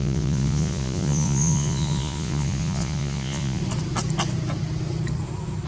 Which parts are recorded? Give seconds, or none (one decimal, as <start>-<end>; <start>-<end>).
3.6-5.7